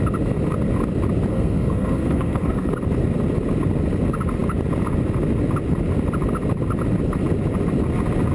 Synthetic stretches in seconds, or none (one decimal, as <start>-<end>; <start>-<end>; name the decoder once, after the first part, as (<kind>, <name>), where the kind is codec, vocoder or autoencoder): 1.3-2.7 (codec, SNAC)